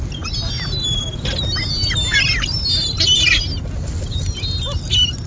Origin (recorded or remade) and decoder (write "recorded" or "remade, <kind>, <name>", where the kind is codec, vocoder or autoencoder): recorded